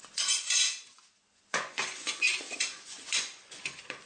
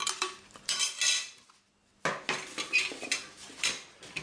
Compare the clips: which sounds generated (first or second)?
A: first